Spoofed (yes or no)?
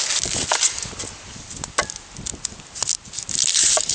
no